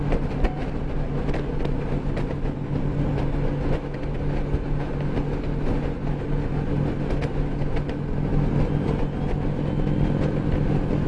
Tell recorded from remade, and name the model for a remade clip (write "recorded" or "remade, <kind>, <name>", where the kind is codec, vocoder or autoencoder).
recorded